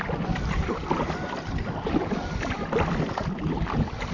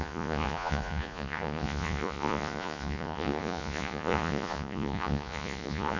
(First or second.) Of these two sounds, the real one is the first